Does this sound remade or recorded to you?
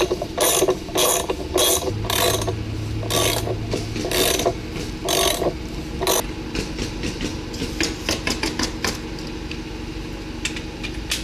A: recorded